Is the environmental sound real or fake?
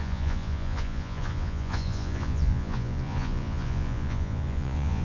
fake